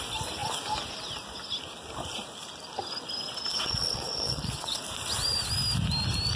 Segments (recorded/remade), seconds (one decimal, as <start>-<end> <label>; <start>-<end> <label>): 0.0-3.5 recorded; 3.5-4.8 remade; 4.8-6.4 recorded